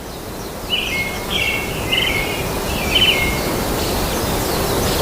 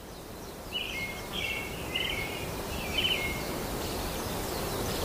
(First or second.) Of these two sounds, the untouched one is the first